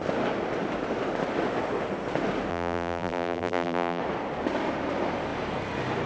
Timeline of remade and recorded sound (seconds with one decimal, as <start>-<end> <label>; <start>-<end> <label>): 0.0-2.5 recorded; 2.5-4.0 remade; 4.0-6.1 recorded